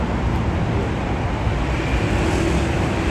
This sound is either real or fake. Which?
real